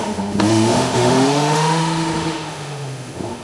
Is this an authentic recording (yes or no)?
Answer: no